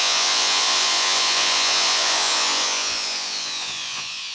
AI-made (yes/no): yes